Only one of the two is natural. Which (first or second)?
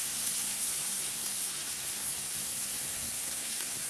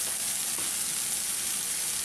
second